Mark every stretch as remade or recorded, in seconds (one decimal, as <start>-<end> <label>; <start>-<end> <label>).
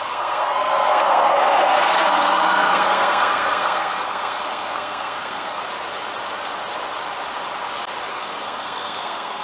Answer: 0.0-5.6 remade; 5.6-8.1 recorded; 8.1-9.4 remade